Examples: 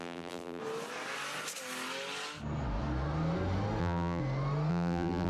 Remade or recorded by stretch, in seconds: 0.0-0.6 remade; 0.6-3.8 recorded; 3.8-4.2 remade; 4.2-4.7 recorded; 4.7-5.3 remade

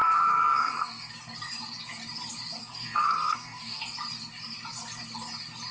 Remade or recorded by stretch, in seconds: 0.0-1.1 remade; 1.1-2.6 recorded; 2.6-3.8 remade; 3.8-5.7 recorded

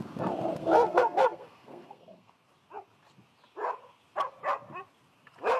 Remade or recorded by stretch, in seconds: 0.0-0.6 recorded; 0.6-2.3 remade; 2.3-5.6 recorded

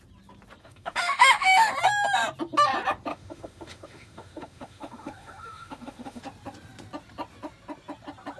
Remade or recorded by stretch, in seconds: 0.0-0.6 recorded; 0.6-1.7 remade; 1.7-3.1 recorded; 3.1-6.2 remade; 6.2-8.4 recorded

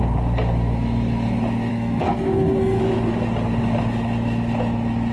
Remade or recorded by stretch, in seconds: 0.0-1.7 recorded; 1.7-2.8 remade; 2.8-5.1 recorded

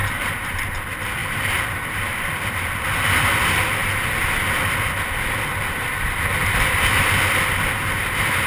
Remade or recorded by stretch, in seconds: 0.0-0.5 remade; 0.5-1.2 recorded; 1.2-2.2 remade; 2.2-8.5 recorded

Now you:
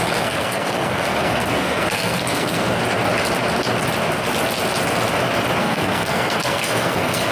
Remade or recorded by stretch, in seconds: 0.0-2.8 remade; 2.8-5.6 recorded; 5.6-7.3 remade